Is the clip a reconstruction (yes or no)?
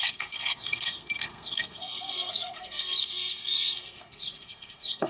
yes